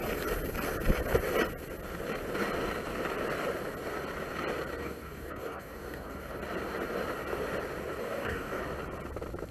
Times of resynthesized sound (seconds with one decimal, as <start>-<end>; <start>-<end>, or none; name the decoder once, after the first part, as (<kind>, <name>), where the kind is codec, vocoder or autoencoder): 4.8-6.4 (codec, DAC); 8.0-8.6